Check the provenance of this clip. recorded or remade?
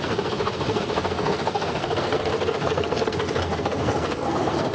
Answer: remade